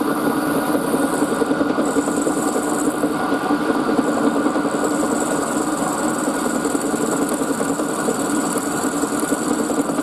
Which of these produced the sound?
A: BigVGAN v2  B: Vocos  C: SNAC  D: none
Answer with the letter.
D